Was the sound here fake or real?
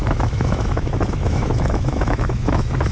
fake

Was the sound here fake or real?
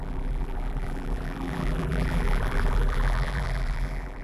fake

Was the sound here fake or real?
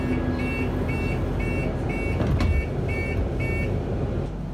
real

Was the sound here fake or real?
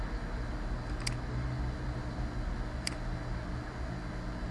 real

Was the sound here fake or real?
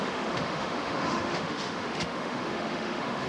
fake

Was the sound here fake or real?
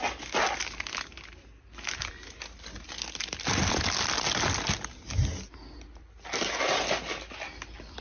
real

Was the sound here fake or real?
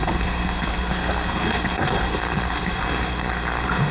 fake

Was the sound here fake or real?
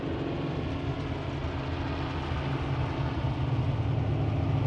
real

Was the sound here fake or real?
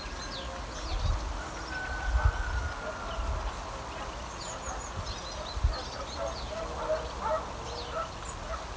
real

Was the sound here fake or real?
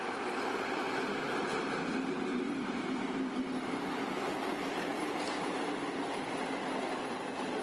real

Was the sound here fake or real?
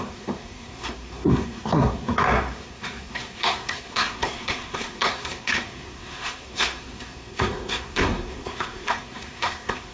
fake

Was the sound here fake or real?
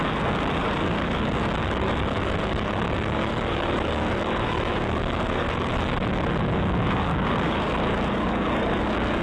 fake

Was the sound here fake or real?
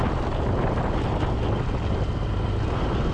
real